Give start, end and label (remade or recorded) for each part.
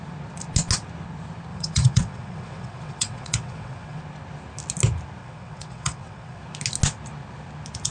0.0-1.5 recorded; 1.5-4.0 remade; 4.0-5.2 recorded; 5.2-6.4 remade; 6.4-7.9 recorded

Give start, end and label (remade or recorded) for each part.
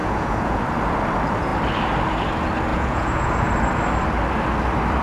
0.0-0.6 remade; 0.6-2.7 recorded; 2.7-3.5 remade; 3.5-5.0 recorded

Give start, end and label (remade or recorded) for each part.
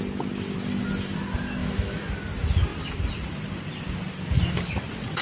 0.0-1.6 recorded; 1.6-2.1 remade; 2.1-5.2 recorded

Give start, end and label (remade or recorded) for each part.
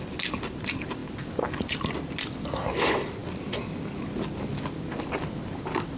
0.0-6.0 recorded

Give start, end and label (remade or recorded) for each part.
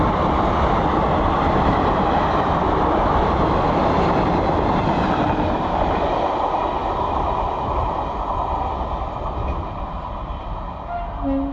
0.0-11.5 recorded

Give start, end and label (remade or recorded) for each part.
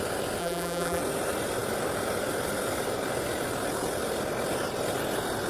0.0-0.4 recorded; 0.4-1.0 remade; 1.0-5.5 recorded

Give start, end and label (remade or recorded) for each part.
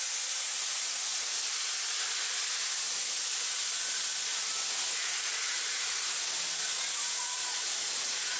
0.0-1.1 remade; 1.1-4.7 recorded; 4.7-8.4 remade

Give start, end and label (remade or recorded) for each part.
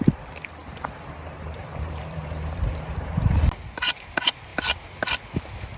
0.0-0.6 recorded; 0.6-1.1 remade; 1.1-1.7 recorded; 1.7-2.6 remade; 2.6-5.8 recorded